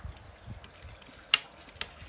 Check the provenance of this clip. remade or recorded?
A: recorded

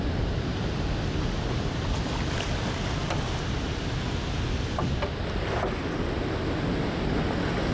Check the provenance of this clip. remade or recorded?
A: recorded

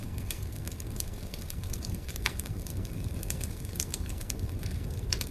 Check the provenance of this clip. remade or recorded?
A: remade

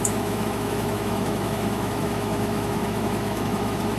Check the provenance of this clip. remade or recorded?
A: remade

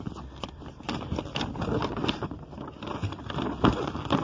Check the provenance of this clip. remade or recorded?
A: recorded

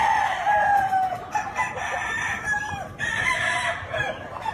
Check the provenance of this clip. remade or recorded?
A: remade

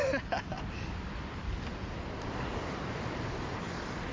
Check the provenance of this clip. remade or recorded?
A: recorded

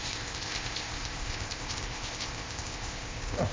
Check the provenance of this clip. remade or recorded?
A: remade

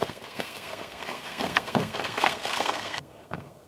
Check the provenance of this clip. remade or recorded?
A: remade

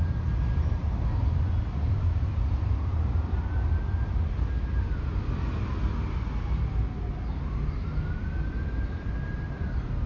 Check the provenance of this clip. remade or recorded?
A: recorded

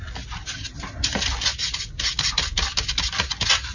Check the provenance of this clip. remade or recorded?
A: recorded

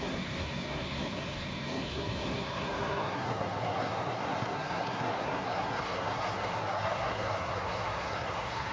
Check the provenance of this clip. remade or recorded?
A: remade